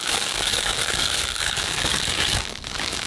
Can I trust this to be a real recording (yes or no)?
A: no